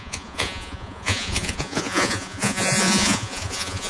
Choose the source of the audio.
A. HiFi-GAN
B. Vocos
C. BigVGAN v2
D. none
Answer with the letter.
B